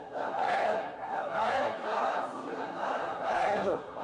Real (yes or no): no